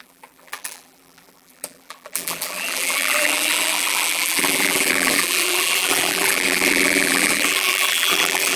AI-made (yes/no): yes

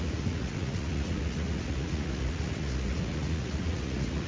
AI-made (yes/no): yes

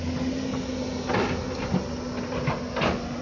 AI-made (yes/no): no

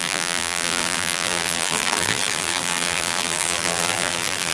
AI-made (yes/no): yes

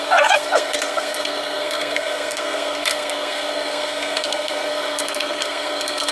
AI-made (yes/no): yes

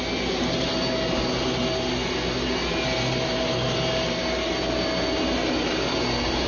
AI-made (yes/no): no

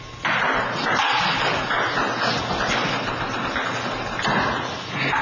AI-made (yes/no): no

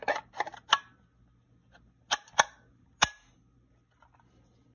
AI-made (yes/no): no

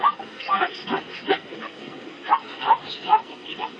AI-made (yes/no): yes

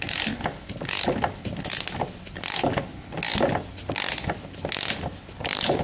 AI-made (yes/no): no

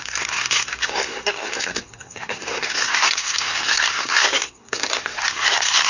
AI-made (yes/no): yes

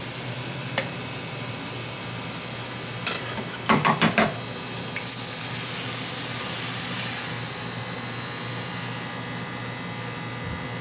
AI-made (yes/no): no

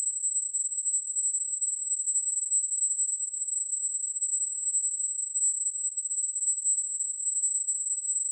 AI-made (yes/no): yes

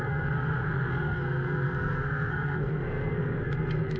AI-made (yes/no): yes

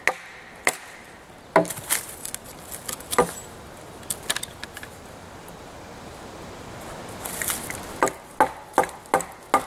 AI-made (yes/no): no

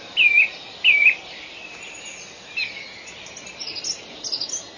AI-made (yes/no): no